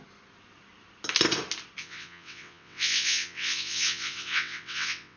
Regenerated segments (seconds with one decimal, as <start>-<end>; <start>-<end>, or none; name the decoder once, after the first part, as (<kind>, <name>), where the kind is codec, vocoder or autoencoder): 1.8-5.2 (vocoder, WaveNeXt)